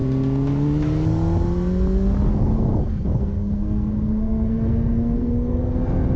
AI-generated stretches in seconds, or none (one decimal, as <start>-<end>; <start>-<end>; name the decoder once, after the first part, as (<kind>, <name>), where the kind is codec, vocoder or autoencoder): 2.3-6.2 (codec, SNAC)